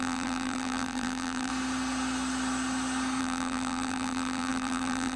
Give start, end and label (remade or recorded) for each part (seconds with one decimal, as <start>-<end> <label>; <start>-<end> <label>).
0.0-1.5 remade; 1.5-3.2 recorded; 3.2-5.2 remade